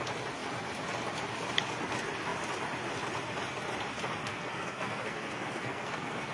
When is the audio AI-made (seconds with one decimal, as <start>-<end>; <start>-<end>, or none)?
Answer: 4.2-6.3